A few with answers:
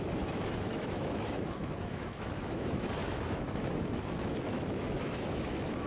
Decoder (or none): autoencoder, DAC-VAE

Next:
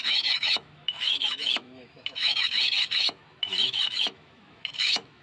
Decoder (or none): autoencoder, DAC-VAE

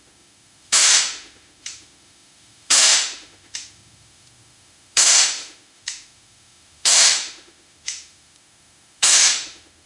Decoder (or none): autoencoder, DAC-VAE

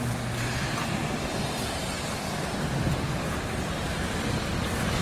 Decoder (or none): none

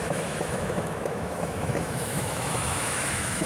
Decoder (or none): autoencoder, DAC-VAE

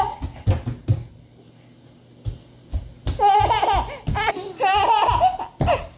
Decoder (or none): none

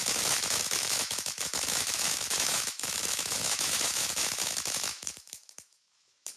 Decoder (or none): autoencoder, DAC-VAE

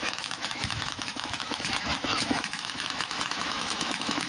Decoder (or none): autoencoder, DAC-VAE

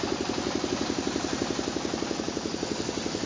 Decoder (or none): none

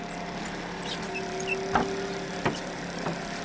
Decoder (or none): none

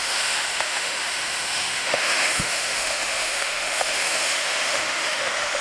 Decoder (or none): autoencoder, DAC-VAE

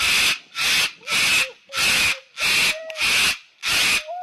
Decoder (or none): none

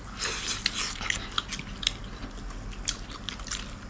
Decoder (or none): none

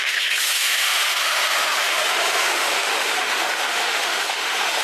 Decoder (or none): autoencoder, DAC-VAE